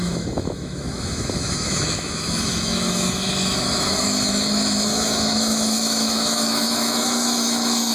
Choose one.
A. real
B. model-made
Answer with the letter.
B